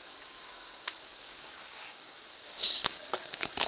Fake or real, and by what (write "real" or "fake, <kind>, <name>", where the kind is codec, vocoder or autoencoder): fake, codec, DAC